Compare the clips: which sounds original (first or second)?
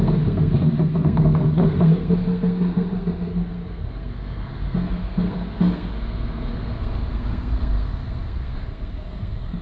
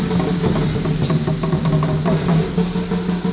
second